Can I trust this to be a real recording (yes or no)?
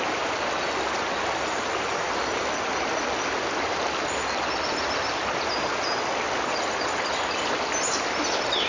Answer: yes